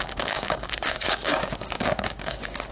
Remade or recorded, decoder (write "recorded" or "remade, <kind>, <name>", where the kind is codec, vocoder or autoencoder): remade, codec, DAC